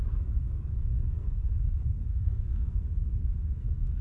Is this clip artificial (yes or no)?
yes